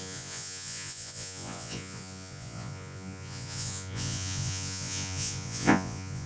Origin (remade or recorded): remade